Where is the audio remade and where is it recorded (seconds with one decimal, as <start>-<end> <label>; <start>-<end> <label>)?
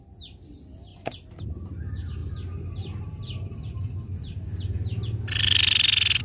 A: 0.0-6.2 recorded